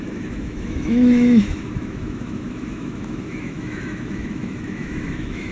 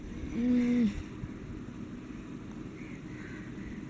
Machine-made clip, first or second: first